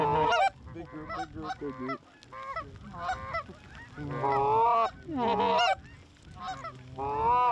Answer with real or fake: real